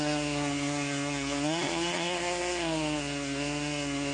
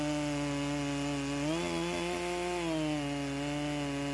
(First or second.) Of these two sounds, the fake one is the first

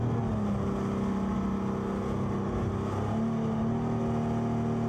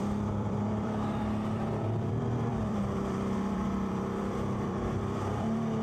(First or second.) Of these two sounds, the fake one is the second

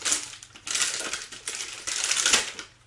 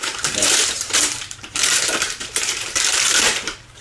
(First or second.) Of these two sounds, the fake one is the second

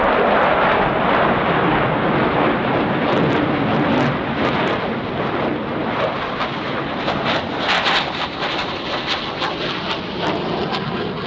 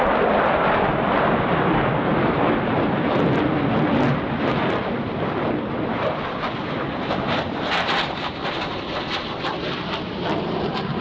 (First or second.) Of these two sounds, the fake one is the second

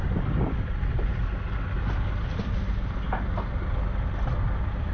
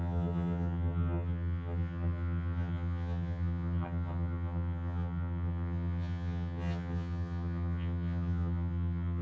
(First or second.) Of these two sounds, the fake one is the second